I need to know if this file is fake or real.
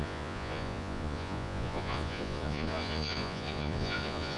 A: fake